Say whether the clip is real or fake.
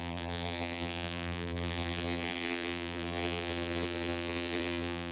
fake